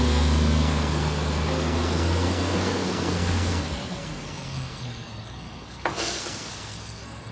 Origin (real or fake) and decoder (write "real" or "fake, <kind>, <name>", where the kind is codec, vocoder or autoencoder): fake, codec, SNAC